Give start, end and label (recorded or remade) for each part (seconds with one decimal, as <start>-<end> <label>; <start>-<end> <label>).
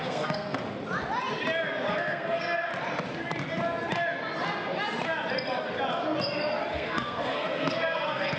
0.0-0.6 remade; 0.6-1.9 recorded; 1.9-2.7 remade; 2.7-6.7 recorded; 6.7-8.4 remade